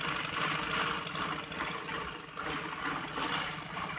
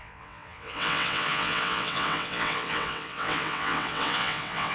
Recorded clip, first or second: first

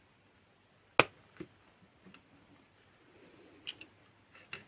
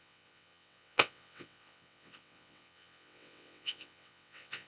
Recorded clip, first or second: first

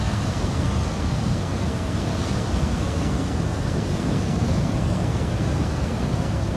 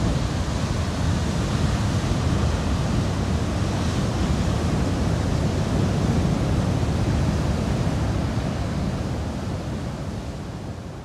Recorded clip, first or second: second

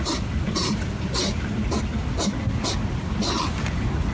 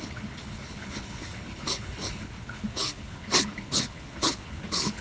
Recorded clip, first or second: first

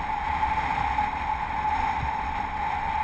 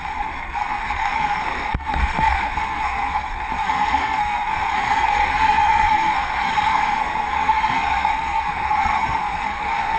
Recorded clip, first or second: first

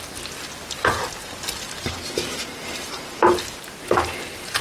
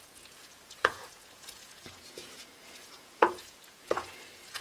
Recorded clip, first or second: first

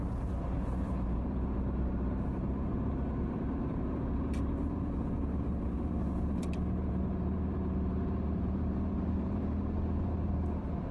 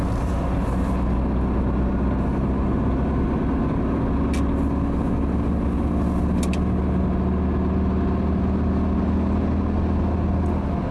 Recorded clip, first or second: second